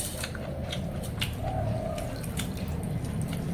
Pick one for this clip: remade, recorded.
recorded